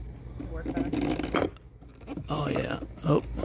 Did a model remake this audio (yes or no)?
no